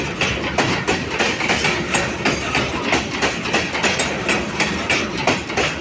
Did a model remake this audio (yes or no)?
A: no